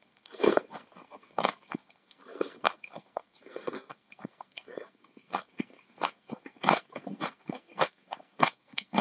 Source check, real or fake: fake